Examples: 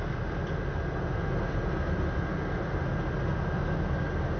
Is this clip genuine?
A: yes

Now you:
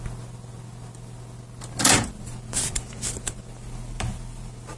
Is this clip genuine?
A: yes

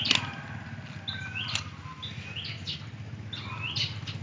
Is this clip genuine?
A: yes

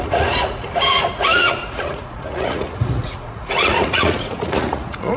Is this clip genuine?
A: no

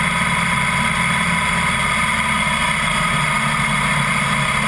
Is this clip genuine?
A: yes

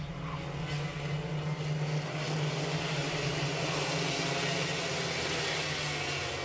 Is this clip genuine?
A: yes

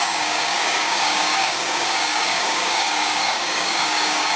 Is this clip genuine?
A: no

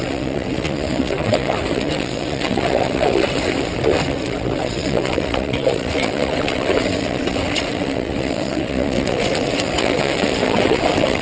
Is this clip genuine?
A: no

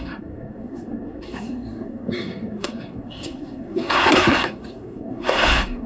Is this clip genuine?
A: no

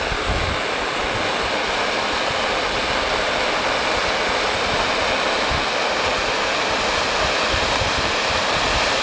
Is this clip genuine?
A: yes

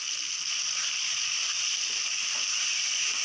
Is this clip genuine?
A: yes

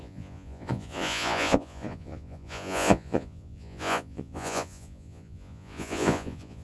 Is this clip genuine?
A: no